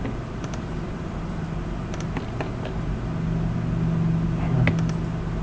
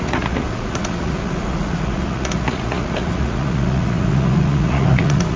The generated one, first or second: second